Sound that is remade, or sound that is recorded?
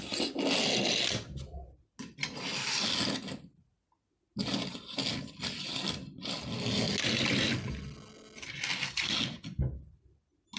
recorded